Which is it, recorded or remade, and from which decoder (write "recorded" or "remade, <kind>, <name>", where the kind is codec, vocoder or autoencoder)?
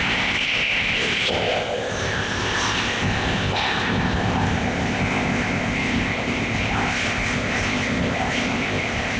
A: remade, codec, ZipCodec